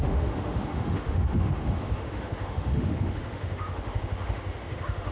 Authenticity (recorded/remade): remade